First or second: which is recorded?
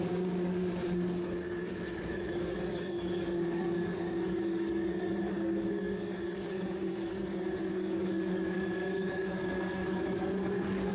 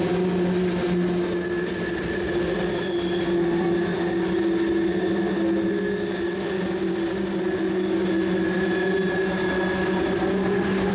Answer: second